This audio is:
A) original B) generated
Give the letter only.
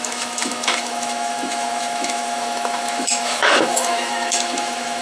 B